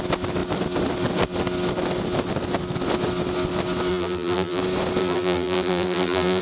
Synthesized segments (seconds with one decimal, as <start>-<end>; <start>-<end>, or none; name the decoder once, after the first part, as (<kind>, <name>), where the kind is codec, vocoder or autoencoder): 3.9-4.6 (vocoder, BigVGAN v2); 5.0-6.4